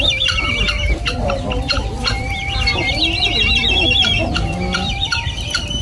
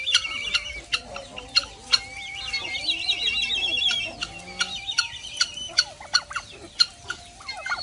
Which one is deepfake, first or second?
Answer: first